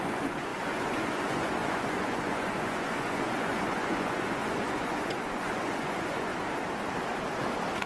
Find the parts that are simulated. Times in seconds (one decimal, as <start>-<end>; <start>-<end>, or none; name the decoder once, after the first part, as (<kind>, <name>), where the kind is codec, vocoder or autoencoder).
0.0-6.3 (vocoder, Vocos)